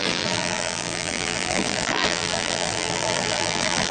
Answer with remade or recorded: remade